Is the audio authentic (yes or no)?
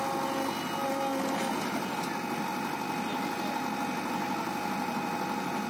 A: yes